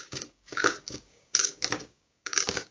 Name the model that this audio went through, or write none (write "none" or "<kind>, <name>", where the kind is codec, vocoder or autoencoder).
codec, DAC